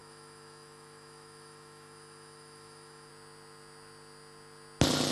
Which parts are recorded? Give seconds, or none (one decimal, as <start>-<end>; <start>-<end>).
3.1-5.1